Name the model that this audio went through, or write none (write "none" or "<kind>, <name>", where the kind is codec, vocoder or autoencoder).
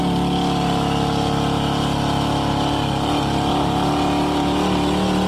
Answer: none